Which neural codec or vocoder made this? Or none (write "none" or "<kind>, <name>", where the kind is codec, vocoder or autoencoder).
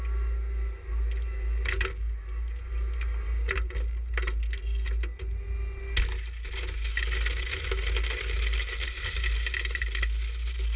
none